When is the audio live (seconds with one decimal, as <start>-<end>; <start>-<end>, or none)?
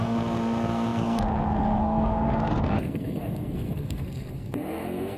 none